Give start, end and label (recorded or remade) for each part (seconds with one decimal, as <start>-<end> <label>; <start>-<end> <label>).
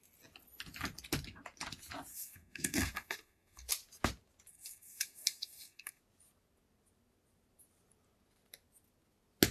0.0-2.1 recorded; 2.1-3.7 remade; 3.7-4.5 recorded; 4.5-6.0 remade; 6.0-9.5 recorded